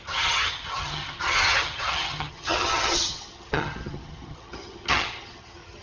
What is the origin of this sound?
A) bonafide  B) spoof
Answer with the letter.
B